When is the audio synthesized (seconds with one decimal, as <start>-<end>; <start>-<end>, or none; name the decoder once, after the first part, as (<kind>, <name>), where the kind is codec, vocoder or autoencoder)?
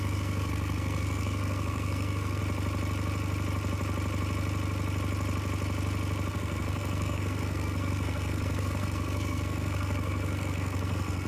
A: 0.0-2.4 (codec, SNAC); 6.3-11.3